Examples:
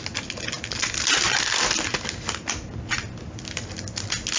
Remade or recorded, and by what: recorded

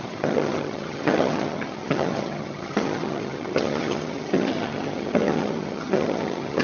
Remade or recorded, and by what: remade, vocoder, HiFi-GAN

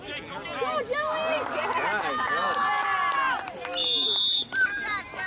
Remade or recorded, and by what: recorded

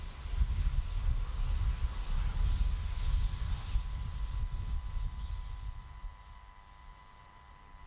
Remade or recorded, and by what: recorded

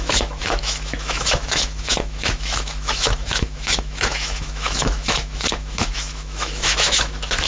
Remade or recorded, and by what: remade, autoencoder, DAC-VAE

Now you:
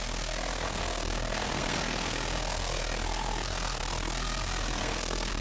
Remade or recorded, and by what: remade, codec, SNAC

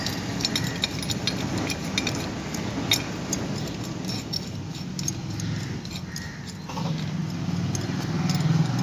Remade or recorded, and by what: recorded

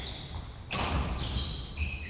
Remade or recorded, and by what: recorded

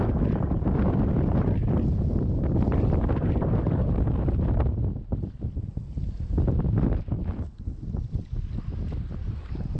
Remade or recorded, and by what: recorded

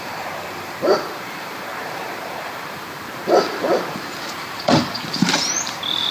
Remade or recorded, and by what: remade, vocoder, BigVGAN v2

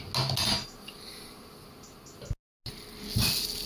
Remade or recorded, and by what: recorded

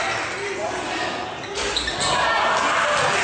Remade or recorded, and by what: recorded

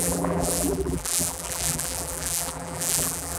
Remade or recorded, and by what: remade, vocoder, BigVGAN v2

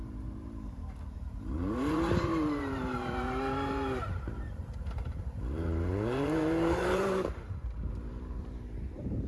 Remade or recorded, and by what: remade, vocoder, BigVGAN v2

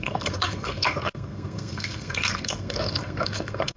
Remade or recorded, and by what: remade, codec, SNAC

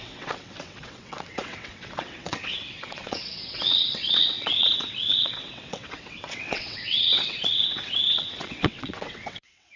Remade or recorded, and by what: remade, vocoder, WaveNeXt